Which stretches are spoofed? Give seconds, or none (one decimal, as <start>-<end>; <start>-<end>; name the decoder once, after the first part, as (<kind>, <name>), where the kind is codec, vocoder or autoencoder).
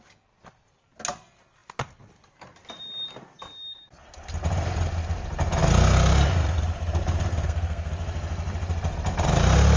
7.3-7.9 (codec, SNAC)